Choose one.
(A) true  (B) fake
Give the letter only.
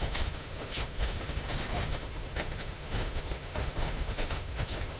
B